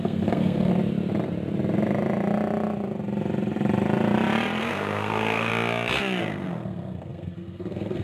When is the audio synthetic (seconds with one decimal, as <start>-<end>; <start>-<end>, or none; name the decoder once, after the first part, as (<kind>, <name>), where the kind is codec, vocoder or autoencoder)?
0.0-0.7 (codec, SNAC); 4.6-5.5; 6.2-8.0